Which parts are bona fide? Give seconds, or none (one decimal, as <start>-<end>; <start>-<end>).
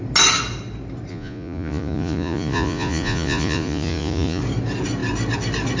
0.0-1.1; 4.4-5.8